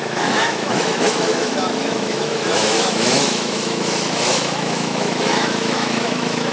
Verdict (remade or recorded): remade